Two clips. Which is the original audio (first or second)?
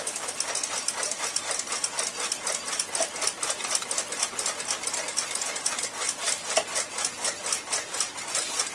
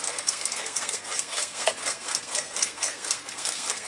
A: first